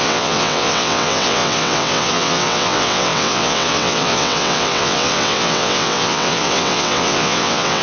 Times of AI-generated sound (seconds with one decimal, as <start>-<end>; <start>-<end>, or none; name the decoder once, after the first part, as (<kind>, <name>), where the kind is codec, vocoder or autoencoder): 0.0-7.8 (vocoder, WaveNeXt)